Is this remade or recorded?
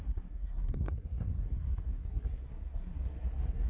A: remade